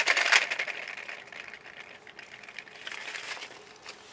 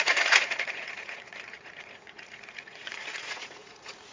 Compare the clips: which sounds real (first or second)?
first